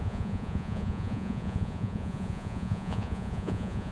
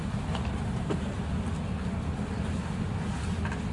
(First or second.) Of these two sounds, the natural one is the second